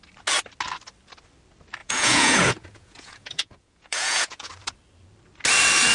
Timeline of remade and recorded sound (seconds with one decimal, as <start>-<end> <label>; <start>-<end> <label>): 0.0-1.8 recorded; 1.8-4.5 remade; 4.5-5.9 recorded